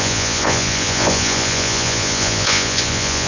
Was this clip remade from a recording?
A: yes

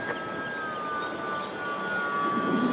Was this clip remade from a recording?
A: no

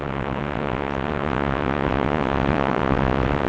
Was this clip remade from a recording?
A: yes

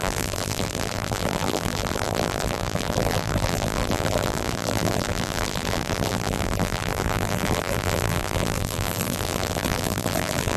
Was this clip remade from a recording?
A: yes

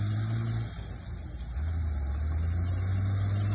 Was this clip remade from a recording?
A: no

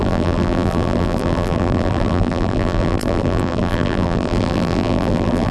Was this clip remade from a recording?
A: yes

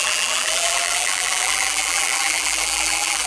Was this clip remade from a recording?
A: yes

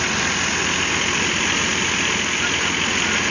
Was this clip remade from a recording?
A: no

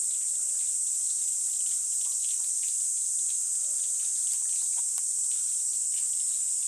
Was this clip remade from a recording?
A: yes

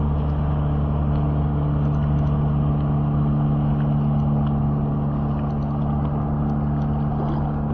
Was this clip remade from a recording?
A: no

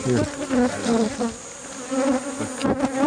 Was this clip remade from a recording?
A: no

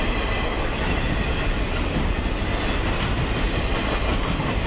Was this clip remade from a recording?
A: no